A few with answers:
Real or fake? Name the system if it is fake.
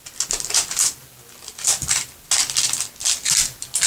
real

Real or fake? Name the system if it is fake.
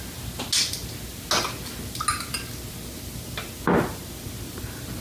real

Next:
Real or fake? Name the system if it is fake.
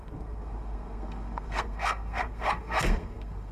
fake, codec, SNAC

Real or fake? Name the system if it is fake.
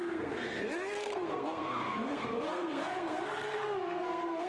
fake, codec, SNAC